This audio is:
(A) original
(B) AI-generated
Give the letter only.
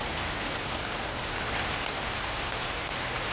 A